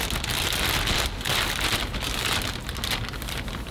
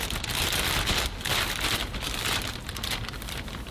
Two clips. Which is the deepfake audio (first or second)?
second